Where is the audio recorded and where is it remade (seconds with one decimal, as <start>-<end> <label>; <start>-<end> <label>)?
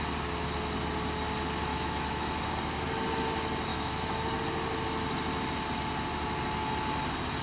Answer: 0.0-1.7 recorded; 1.7-2.4 remade; 2.4-3.7 recorded; 3.7-4.4 remade; 4.4-7.4 recorded